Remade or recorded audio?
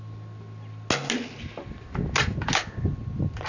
recorded